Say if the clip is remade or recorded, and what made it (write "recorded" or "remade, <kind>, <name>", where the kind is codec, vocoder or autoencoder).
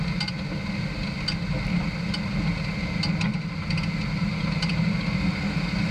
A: recorded